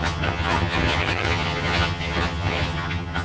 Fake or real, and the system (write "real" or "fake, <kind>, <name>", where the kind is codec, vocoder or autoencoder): fake, vocoder, HiFi-GAN